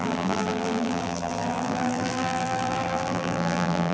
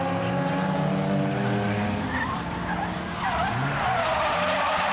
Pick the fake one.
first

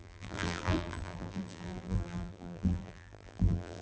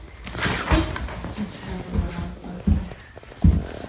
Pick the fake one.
first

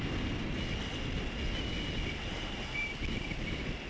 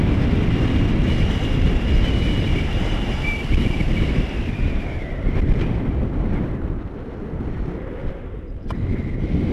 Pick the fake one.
second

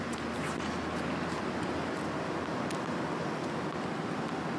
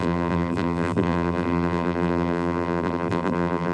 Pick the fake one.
second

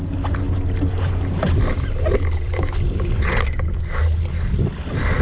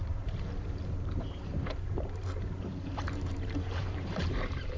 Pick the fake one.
second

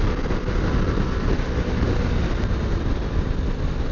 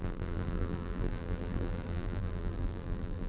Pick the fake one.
second